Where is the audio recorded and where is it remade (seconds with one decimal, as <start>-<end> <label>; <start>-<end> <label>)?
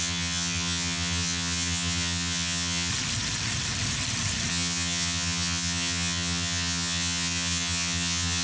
0.0-2.9 remade; 2.9-4.5 recorded; 4.5-8.4 remade